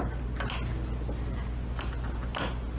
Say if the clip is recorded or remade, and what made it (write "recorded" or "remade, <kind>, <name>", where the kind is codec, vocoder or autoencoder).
recorded